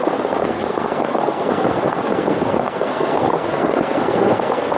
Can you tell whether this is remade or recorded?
remade